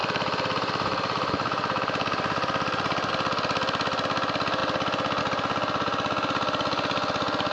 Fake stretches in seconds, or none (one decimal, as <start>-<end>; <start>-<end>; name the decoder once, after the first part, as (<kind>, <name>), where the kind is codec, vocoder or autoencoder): 0.0-3.1 (vocoder, BigVGAN v2)